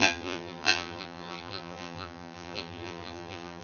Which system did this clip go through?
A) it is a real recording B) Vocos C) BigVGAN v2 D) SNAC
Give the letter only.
C